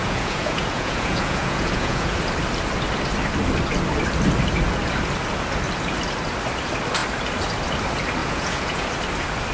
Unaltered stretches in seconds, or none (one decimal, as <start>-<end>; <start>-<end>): 2.1-8.2; 8.9-9.5